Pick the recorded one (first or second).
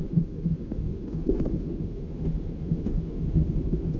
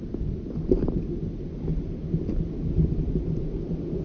second